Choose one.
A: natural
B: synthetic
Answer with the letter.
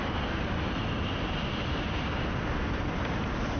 A